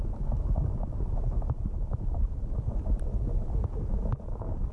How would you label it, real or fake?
real